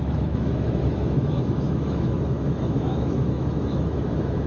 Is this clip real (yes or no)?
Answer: no